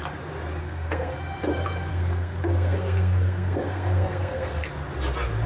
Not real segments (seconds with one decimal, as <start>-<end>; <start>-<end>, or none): 0.6-1.1; 1.9-4.7